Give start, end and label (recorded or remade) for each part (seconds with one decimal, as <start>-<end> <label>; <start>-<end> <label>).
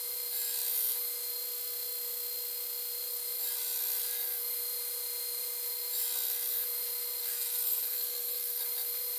0.0-7.2 recorded; 7.2-8.6 remade; 8.6-9.2 recorded